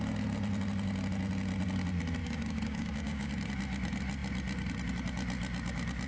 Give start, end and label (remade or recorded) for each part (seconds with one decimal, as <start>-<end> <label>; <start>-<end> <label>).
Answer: 0.0-2.2 recorded; 2.2-3.3 remade; 3.3-6.1 recorded